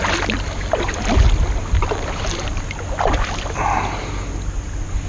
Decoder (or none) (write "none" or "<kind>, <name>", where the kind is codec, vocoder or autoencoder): none